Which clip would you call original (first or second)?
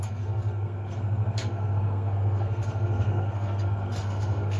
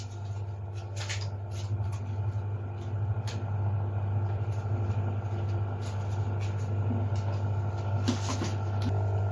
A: second